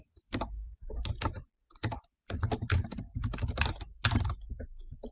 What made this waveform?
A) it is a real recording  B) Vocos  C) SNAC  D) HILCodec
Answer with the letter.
A